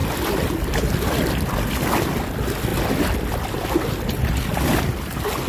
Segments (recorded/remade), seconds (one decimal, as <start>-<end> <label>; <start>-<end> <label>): 0.0-5.5 recorded